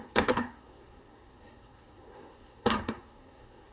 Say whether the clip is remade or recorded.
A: remade